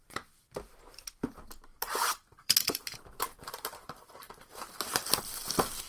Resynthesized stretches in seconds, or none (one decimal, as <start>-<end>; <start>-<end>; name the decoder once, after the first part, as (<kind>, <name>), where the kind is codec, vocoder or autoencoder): 1.7-5.2 (vocoder, BigVGAN v2)